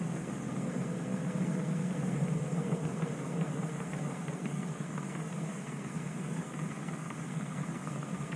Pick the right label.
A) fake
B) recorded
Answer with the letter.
A